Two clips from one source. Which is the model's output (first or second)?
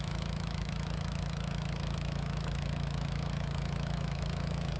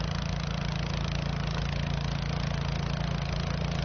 first